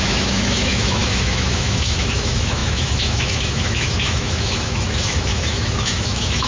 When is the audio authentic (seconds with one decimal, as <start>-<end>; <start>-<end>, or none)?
none